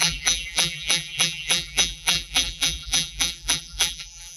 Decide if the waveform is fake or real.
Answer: fake